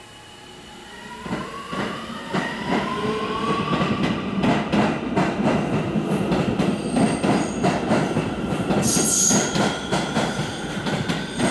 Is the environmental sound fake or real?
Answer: real